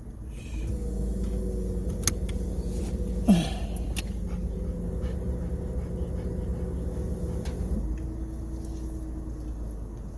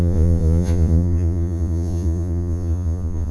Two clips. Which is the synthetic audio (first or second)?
second